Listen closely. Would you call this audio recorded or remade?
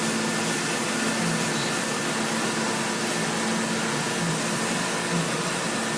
recorded